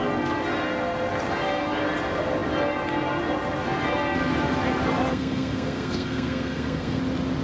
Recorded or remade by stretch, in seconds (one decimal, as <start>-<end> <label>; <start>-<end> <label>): 0.0-5.1 recorded; 5.1-7.0 remade; 7.0-7.4 recorded